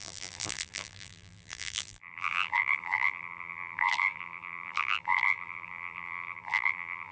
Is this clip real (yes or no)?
no